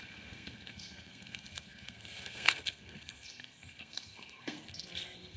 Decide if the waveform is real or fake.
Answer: fake